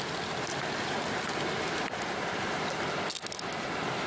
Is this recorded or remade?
recorded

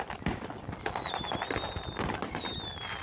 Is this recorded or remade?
recorded